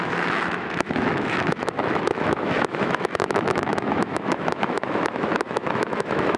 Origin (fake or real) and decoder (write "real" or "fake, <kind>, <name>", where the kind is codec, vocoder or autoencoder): fake, autoencoder, DAC-VAE